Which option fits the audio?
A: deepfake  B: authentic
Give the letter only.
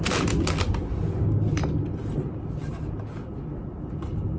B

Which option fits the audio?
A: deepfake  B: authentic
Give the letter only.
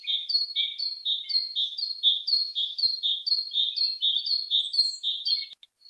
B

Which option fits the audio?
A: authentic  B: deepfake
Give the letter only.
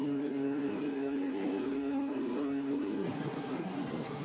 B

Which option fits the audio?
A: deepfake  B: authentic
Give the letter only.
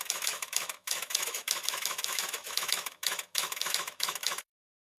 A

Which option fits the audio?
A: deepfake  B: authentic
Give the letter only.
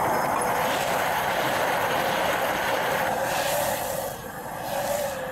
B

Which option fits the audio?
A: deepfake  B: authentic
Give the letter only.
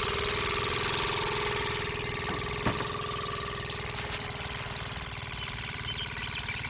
B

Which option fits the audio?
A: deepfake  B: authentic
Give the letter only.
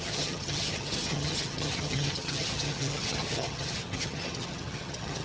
A